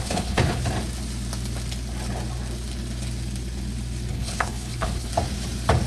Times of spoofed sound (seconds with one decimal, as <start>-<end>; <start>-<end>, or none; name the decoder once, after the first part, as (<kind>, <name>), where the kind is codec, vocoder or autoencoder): 0.0-0.6 (codec, HILCodec); 4.1-5.1